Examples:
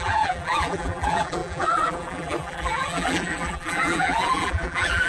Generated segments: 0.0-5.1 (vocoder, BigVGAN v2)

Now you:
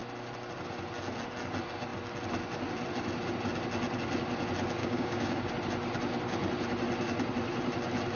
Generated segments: 4.8-5.5 (codec, DAC)